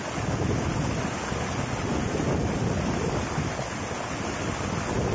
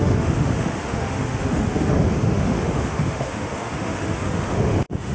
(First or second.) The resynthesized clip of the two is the second